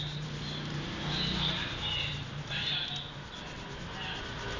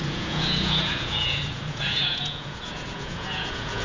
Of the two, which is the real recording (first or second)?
first